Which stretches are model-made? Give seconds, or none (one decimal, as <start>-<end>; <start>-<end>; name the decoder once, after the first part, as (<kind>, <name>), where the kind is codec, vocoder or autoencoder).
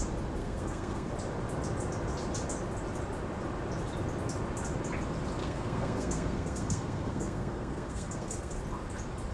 0.4-1.1 (codec, SNAC); 5.4-8.6